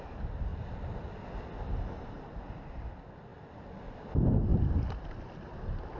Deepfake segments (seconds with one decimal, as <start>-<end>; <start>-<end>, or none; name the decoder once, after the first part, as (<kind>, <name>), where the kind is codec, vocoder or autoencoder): 4.5-5.5 (vocoder, BigVGAN v2)